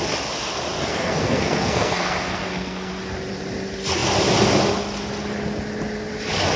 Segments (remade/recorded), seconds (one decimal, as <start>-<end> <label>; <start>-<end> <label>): 0.0-0.9 recorded; 0.9-2.9 remade; 2.9-6.6 recorded